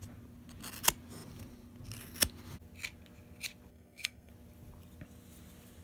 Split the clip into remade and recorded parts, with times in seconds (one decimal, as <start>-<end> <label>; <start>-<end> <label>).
0.0-3.7 recorded; 3.7-4.3 remade; 4.3-5.8 recorded